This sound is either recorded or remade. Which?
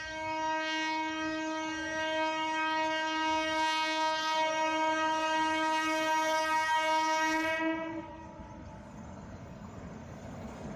remade